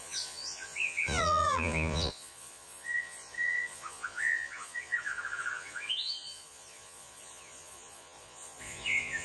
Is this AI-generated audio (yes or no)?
yes